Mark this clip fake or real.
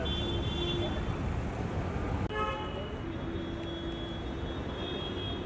real